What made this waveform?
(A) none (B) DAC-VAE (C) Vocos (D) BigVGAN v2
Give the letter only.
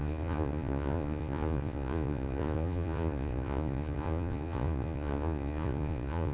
C